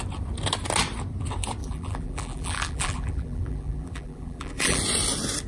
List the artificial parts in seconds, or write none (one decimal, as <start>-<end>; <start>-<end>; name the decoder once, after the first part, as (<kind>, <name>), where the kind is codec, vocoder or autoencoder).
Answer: 1.6-4.8 (vocoder, BigVGAN v2)